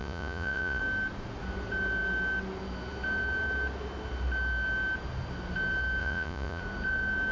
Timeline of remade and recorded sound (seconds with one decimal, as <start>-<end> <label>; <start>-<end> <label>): 0.0-0.8 remade; 0.8-6.0 recorded; 6.0-6.6 remade; 6.6-7.3 recorded